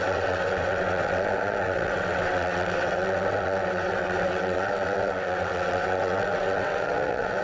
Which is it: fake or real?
fake